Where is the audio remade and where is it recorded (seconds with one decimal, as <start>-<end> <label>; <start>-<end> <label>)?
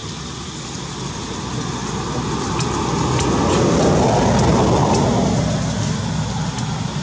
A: 0.0-7.0 recorded